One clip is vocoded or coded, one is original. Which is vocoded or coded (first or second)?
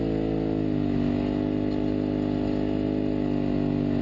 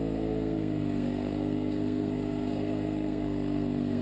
second